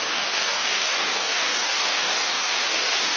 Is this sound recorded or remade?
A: remade